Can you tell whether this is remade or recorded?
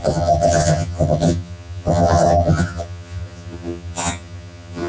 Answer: remade